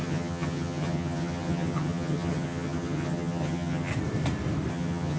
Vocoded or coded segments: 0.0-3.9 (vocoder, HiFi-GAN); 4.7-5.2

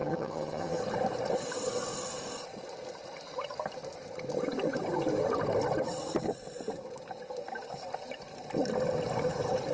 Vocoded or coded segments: 0.0-0.8 (vocoder, HiFi-GAN)